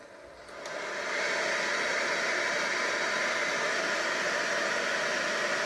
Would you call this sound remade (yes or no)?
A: no